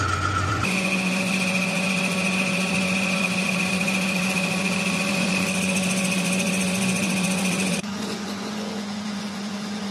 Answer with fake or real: fake